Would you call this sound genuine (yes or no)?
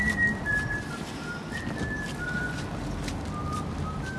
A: yes